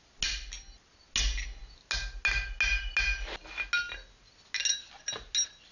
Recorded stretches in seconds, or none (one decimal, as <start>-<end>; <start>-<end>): 0.0-5.7